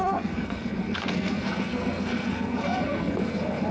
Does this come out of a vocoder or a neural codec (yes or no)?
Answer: yes